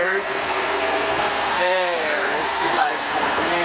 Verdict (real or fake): fake